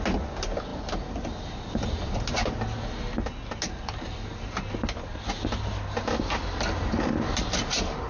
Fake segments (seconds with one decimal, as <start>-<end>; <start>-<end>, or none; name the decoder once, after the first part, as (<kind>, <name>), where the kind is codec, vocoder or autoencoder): none